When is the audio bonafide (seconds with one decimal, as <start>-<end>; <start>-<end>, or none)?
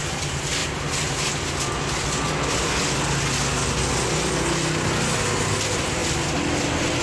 0.0-7.0